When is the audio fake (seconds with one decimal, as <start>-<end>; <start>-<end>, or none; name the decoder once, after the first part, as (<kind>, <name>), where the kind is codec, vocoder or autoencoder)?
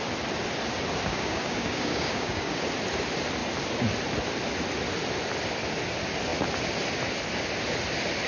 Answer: 1.1-2.6 (codec, DAC)